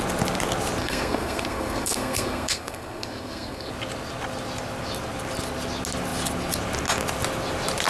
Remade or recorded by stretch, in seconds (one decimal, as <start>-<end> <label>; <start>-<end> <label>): 0.0-0.8 recorded; 0.8-3.7 remade; 3.7-7.9 recorded